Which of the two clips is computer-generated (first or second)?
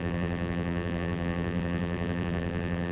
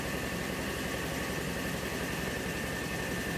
first